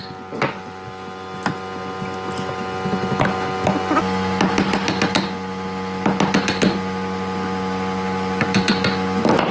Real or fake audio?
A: real